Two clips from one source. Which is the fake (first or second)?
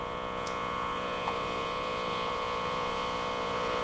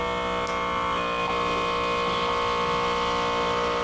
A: first